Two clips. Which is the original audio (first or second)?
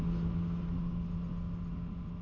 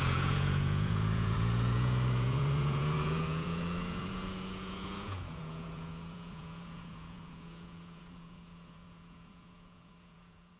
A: first